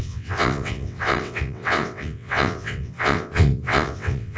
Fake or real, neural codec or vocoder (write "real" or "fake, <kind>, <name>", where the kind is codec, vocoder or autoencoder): fake, vocoder, WaveNeXt